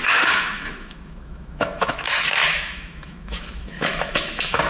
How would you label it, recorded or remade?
remade